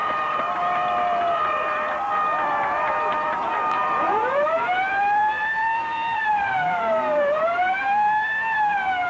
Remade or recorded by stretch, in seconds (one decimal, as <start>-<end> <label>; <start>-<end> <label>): 0.0-0.6 remade; 0.6-3.1 recorded; 3.1-7.8 remade; 7.8-9.1 recorded